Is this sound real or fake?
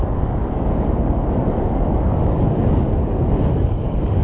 fake